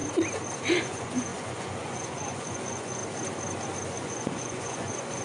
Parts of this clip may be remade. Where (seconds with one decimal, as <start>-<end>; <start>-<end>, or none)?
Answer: 0.8-3.0; 3.8-5.2